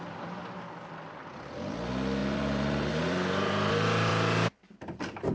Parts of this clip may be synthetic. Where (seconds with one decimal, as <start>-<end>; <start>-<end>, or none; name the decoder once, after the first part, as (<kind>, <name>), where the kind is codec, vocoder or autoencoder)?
0.0-0.4 (vocoder, BigVGAN v2); 1.3-4.1; 4.6-5.3